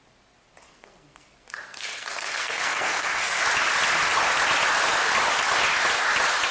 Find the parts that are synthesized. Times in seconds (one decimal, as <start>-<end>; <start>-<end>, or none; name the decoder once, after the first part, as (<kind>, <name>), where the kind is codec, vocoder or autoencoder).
0.6-3.4 (codec, SNAC)